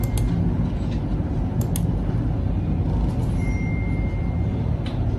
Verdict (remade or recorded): recorded